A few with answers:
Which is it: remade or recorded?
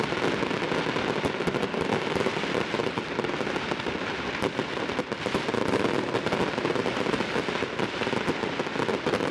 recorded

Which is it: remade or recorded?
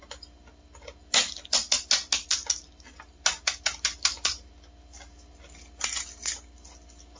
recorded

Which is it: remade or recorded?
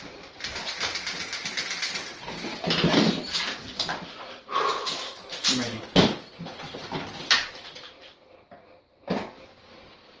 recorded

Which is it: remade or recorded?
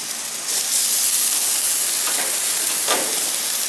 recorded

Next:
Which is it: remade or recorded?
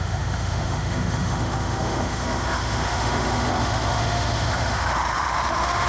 remade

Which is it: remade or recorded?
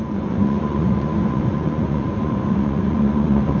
remade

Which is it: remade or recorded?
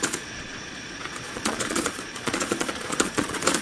remade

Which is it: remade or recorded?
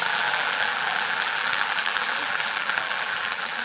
remade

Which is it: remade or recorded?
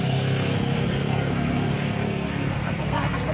remade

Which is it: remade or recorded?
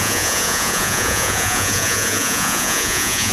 remade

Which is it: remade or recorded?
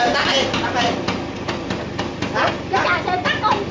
recorded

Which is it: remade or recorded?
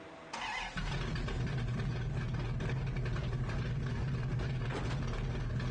recorded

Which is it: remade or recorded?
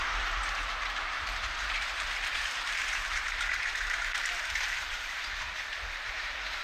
remade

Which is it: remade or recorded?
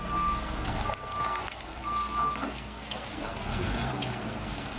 remade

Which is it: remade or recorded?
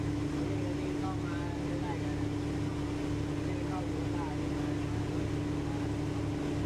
recorded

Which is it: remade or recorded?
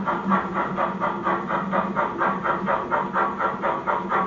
recorded